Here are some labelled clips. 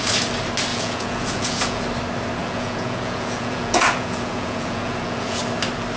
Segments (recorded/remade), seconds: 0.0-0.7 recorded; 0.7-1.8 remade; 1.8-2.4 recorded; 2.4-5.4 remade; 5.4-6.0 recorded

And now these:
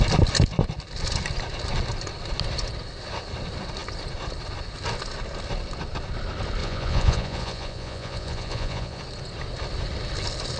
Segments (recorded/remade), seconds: 0.0-6.6 recorded; 6.6-9.0 remade; 9.0-10.6 recorded

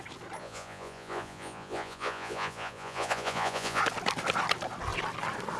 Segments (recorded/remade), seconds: 0.0-0.4 recorded; 0.4-3.8 remade; 3.8-5.6 recorded

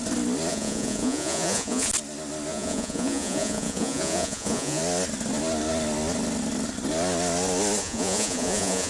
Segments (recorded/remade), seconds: 0.0-0.5 recorded; 0.5-1.9 remade; 1.9-2.5 recorded; 2.5-4.8 remade; 4.8-7.8 recorded; 7.8-8.9 remade

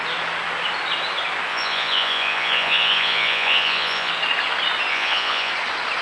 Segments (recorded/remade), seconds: 0.0-1.5 recorded; 1.5-4.1 remade; 4.1-4.9 recorded; 4.9-5.5 remade; 5.5-6.0 recorded